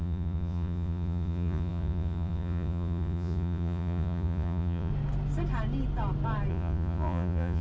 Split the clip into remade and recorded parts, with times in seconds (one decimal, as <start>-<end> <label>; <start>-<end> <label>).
0.0-4.9 remade; 4.9-6.5 recorded; 6.5-7.6 remade